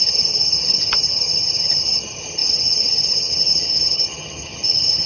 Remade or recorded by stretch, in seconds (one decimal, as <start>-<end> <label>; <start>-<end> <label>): 0.0-5.1 remade